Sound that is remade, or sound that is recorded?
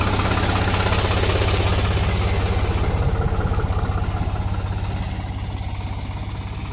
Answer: recorded